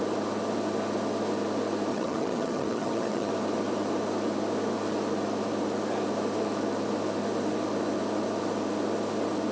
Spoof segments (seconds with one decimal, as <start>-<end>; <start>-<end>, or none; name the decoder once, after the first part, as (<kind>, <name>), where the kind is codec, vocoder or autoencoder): 1.9-3.3 (vocoder, HiFi-GAN)